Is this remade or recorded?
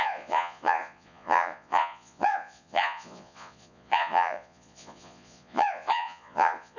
remade